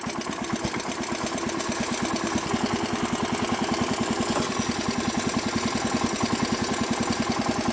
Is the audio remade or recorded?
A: recorded